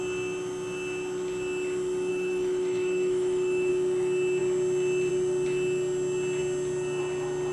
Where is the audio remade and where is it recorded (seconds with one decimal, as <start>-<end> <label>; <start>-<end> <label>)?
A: 0.0-2.1 recorded; 2.1-3.7 remade; 3.7-7.5 recorded